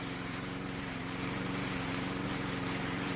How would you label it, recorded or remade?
remade